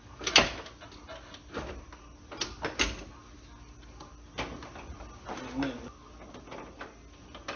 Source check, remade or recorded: recorded